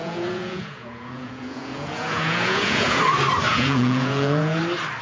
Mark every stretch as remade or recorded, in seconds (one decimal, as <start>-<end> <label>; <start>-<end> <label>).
0.0-3.0 remade; 3.0-3.5 recorded; 3.5-4.6 remade; 4.6-5.0 recorded